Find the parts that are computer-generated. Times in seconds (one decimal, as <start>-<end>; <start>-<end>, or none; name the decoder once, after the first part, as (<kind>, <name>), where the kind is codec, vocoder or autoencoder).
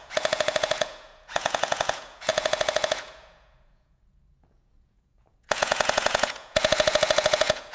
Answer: 0.0-7.7 (vocoder, Vocos)